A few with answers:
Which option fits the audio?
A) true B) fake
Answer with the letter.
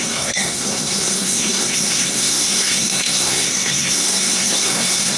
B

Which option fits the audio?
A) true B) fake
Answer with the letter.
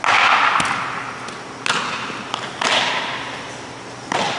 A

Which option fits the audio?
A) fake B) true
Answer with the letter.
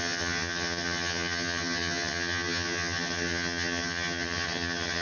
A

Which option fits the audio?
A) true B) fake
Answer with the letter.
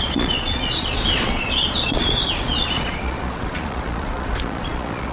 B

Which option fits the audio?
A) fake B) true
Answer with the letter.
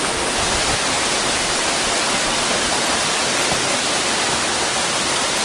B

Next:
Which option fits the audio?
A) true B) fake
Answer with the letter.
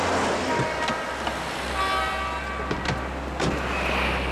A